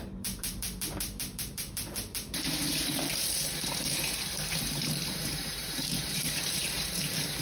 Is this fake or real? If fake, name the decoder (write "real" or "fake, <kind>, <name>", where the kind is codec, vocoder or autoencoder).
fake, vocoder, BigVGAN v2